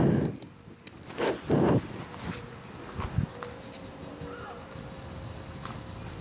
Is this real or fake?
real